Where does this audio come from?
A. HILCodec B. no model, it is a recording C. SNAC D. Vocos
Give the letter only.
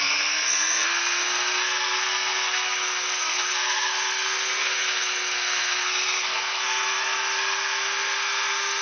C